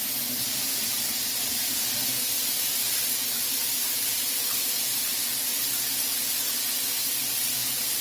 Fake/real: real